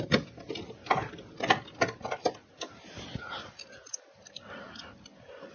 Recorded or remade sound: recorded